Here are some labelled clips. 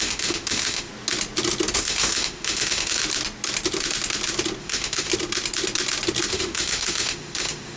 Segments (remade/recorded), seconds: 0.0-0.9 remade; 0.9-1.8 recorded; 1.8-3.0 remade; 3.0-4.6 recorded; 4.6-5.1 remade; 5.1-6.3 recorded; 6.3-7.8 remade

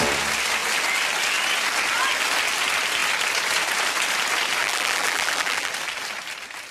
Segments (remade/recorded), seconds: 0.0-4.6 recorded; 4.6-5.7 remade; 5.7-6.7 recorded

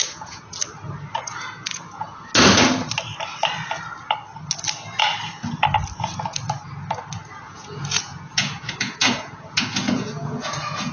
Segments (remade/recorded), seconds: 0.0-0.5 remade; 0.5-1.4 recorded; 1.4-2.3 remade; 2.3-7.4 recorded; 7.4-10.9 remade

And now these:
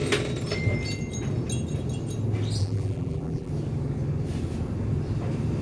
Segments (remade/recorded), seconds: 0.0-2.6 recorded; 2.6-3.5 remade; 3.5-5.6 recorded

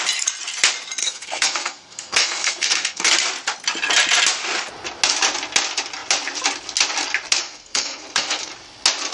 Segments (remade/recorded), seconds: 0.0-1.0 recorded; 1.0-3.1 remade; 3.1-7.4 recorded; 7.4-8.5 remade; 8.5-9.1 recorded

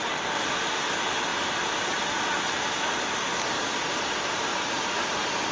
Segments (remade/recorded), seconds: 0.0-4.5 recorded; 4.5-5.0 remade; 5.0-5.5 recorded

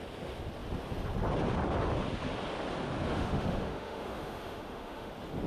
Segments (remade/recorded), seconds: 0.0-3.1 recorded; 3.1-5.1 remade; 5.1-5.5 recorded

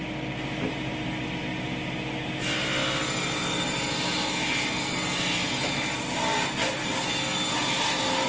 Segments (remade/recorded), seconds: 0.0-8.3 recorded